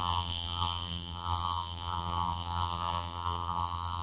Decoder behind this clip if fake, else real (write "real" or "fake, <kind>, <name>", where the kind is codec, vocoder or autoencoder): fake, vocoder, BigVGAN v2